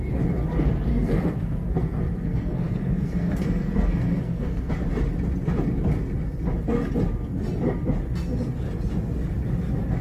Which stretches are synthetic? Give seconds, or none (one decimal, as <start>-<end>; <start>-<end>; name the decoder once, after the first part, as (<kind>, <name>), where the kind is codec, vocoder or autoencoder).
0.9-4.7 (codec, SNAC)

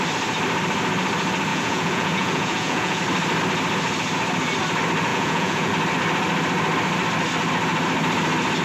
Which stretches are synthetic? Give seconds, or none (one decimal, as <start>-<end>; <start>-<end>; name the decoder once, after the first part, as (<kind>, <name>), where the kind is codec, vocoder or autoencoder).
1.5-3.0 (vocoder, Vocos); 5.1-5.7

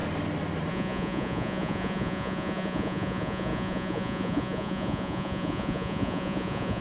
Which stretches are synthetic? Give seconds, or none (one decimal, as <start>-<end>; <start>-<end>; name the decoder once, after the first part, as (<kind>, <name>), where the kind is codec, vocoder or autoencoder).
0.7-6.8 (vocoder, Vocos)

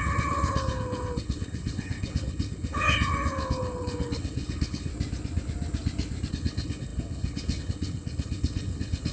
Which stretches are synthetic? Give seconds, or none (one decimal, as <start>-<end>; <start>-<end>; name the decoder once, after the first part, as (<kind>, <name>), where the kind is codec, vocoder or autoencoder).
0.0-4.9 (codec, HILCodec); 6.3-9.1

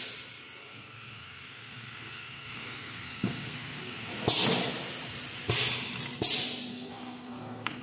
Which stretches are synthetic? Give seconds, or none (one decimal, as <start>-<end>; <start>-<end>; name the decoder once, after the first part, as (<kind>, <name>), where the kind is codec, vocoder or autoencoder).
0.6-4.1 (codec, SNAC); 6.7-7.8

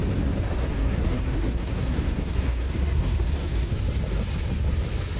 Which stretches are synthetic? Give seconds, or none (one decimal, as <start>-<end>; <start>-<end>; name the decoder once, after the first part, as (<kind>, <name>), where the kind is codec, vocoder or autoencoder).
0.6-3.7 (codec, SNAC)

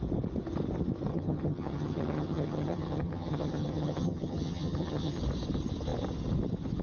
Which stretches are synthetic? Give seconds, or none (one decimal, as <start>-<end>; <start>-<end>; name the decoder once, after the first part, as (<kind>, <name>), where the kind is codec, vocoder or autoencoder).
1.1-5.2 (vocoder, HiFi-GAN)

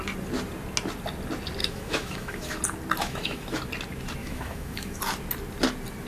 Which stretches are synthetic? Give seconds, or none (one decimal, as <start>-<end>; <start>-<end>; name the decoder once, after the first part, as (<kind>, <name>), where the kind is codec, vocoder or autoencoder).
1.6-2.6 (autoencoder, DAC-VAE); 3.0-3.6; 4.2-5.0